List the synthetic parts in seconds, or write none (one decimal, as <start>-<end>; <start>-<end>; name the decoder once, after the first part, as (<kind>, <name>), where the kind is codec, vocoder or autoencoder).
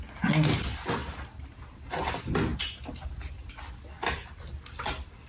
1.0-1.6 (vocoder, BigVGAN v2); 2.5-3.5